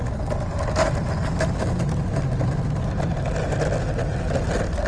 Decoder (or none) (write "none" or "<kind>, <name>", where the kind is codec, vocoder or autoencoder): none